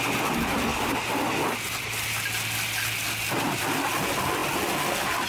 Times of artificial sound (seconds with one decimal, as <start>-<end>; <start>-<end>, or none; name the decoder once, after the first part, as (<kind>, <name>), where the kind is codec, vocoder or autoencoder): none